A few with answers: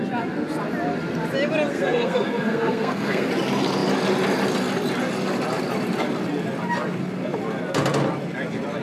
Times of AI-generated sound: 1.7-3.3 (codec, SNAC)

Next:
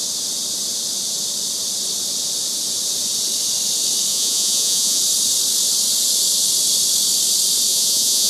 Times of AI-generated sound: 4.1-5.0 (vocoder, Vocos); 7.7-8.3

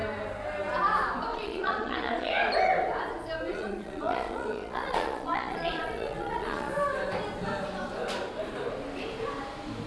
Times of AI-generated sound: 1.3-2.3 (vocoder, Vocos); 3.5-6.7

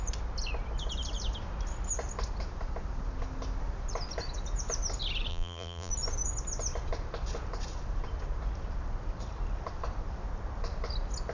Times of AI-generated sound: 5.3-5.9 (vocoder, BigVGAN v2)

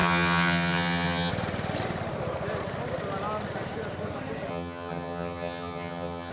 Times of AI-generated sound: 0.0-1.3 (vocoder, HiFi-GAN); 4.5-6.3

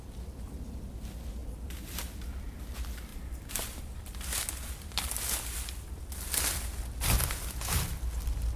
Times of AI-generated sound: 3.1-4.0 (vocoder, BigVGAN v2)